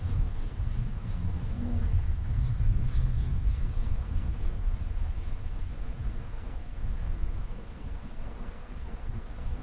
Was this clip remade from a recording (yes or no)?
yes